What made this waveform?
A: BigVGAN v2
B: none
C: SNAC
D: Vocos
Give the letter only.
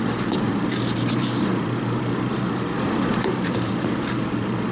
A